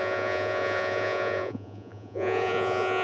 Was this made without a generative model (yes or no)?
no